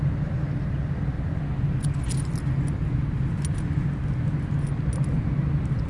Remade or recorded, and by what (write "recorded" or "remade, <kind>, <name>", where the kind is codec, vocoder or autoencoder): recorded